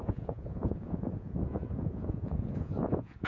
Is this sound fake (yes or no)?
yes